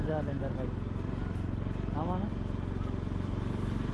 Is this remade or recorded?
recorded